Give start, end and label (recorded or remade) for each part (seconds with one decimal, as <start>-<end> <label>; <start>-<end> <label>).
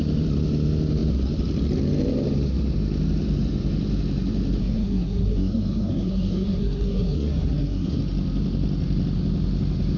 0.0-4.6 recorded; 4.6-8.0 remade; 8.0-10.0 recorded